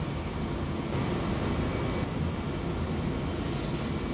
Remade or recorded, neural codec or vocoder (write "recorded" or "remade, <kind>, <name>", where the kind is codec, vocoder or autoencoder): recorded